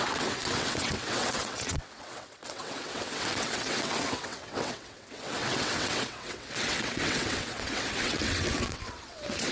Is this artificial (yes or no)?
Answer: yes